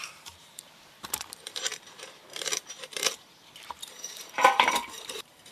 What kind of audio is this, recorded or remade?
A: remade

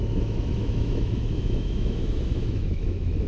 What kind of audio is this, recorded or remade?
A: remade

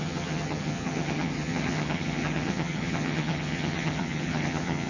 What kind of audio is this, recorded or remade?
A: remade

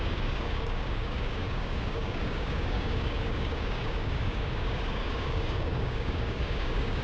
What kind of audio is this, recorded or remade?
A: remade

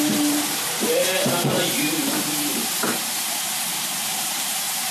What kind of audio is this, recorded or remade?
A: remade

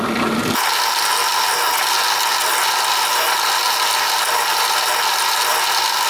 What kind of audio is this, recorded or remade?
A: recorded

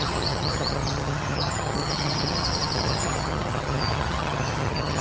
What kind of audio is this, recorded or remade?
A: remade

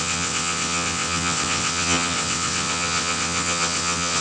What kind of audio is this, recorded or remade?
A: remade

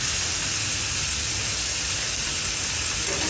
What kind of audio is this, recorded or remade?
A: recorded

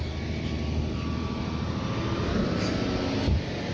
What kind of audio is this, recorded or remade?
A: recorded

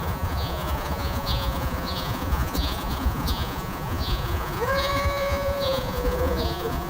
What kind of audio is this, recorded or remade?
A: remade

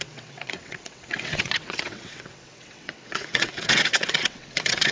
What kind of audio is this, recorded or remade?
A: remade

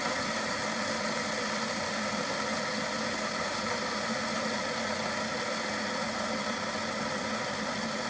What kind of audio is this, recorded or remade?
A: recorded